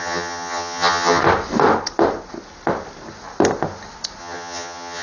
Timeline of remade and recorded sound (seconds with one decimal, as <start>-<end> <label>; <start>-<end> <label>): 0.0-1.2 remade; 1.2-4.2 recorded; 4.2-5.0 remade

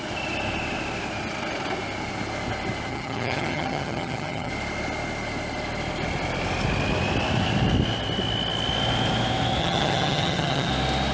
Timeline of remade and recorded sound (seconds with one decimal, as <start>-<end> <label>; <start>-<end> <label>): 0.0-2.9 recorded; 2.9-4.5 remade; 4.5-9.6 recorded; 9.6-10.7 remade; 10.7-11.1 recorded

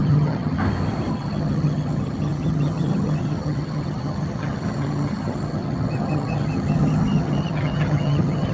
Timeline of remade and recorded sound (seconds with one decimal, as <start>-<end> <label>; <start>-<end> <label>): 0.0-0.6 remade; 0.6-1.1 recorded; 1.1-8.5 remade

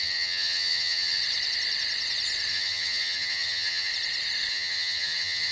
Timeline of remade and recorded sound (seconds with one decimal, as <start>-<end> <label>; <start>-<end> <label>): 0.0-1.2 remade; 1.2-2.5 recorded; 2.5-3.9 remade; 3.9-4.5 recorded; 4.5-5.5 remade

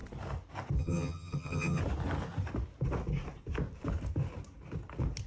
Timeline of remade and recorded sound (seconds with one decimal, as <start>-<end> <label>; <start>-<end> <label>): 0.0-0.8 recorded; 0.8-1.8 remade; 1.8-5.3 recorded

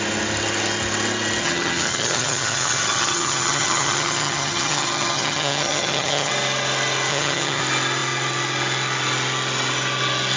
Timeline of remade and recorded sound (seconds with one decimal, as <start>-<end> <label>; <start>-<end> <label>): 0.0-1.4 recorded; 1.4-6.3 remade; 6.3-7.1 recorded; 7.1-7.6 remade; 7.6-10.4 recorded